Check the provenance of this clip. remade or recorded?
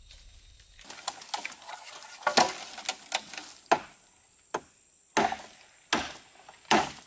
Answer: recorded